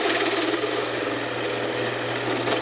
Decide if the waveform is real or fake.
real